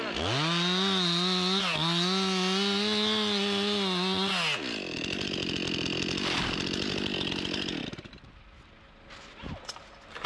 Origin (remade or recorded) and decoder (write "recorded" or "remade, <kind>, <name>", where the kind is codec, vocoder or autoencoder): recorded